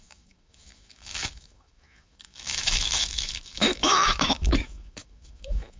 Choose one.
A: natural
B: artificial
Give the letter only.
B